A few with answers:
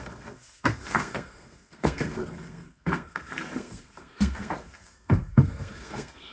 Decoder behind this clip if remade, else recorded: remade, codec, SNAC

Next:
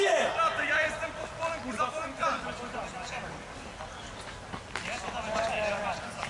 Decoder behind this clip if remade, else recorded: recorded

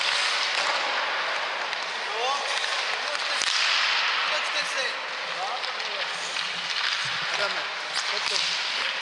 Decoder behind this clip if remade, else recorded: recorded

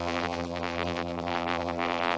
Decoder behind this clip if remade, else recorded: remade, vocoder, BigVGAN v2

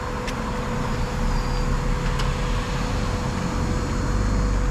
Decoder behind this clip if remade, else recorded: recorded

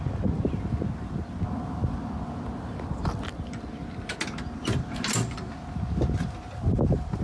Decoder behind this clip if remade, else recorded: recorded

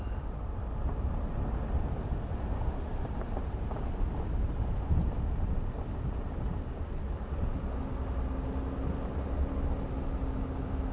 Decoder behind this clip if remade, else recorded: recorded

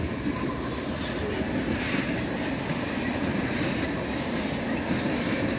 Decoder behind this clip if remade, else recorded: recorded